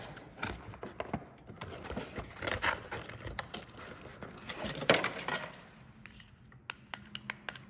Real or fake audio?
real